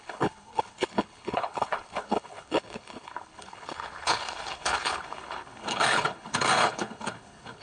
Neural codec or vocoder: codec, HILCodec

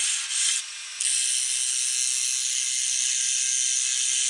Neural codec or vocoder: none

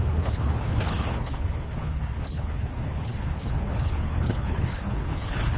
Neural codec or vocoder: codec, HILCodec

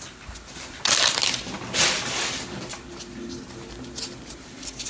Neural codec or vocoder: none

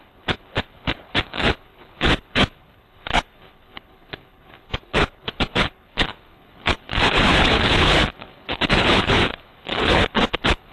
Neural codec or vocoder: codec, HILCodec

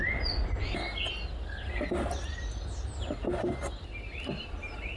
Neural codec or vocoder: none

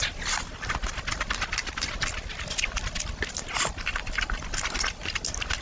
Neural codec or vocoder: none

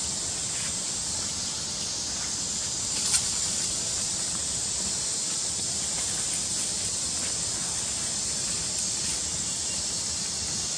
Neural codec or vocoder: none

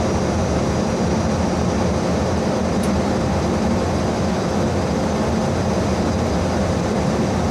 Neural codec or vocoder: none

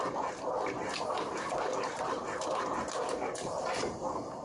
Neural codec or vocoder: none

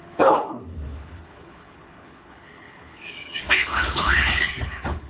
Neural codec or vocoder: codec, HILCodec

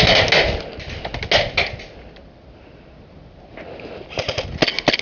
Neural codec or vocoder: none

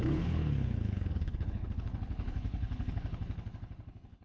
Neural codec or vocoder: codec, HILCodec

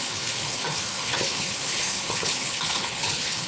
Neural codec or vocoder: codec, HILCodec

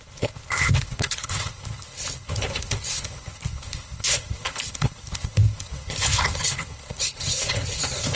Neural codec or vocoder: codec, HILCodec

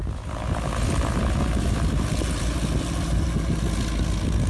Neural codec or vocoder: none